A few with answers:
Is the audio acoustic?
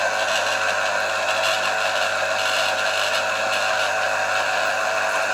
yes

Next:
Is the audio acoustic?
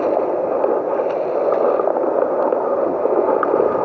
yes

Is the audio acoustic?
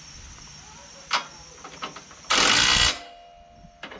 yes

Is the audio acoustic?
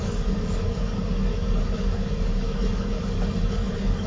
no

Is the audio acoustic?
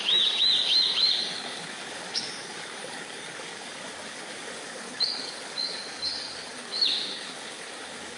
no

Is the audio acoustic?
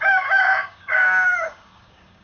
no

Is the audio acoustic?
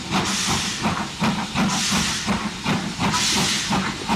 yes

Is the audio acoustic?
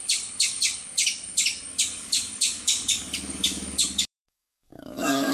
no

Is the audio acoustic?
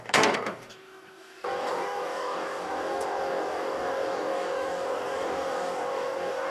no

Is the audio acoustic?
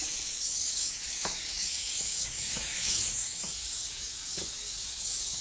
no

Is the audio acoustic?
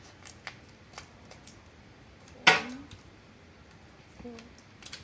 yes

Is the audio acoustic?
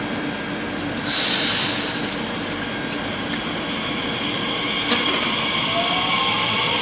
yes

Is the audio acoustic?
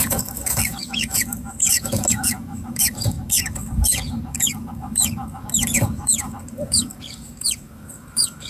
no